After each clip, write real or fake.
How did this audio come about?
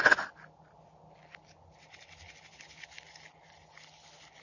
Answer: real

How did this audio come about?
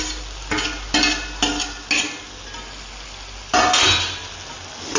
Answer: real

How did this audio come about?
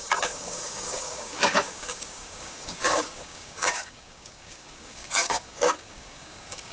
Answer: fake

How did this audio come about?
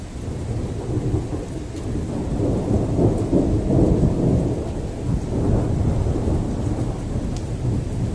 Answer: real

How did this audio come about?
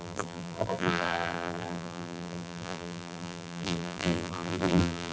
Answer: fake